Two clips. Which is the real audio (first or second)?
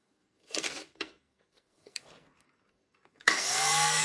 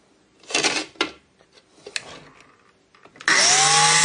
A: second